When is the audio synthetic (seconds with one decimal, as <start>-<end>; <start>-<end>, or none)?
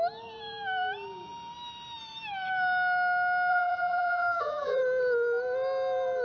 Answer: 3.5-4.8